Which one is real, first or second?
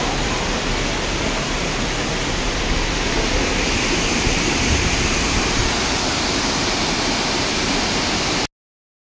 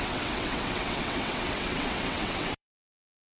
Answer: first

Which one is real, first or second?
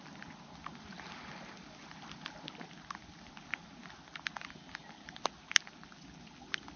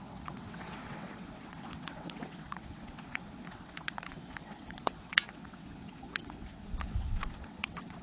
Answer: first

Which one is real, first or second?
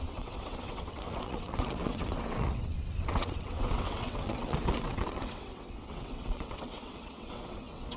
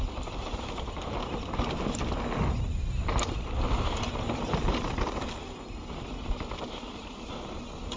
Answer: second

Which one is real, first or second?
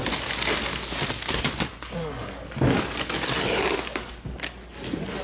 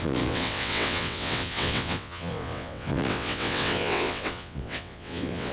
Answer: first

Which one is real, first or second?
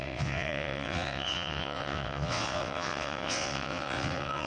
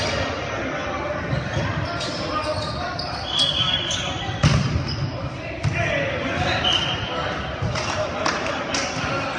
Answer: second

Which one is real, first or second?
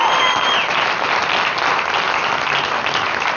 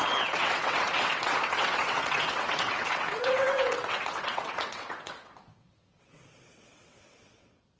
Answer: first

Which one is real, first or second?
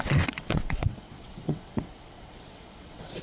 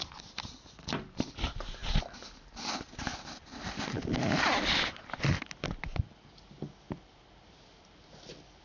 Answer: second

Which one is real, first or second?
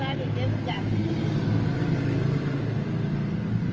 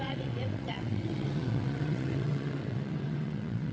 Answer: first